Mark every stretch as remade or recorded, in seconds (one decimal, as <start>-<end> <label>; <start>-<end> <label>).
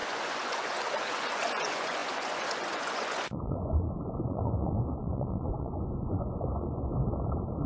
0.0-6.9 remade; 6.9-7.7 recorded